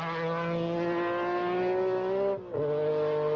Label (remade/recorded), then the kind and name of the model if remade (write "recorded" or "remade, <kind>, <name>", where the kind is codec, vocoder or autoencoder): recorded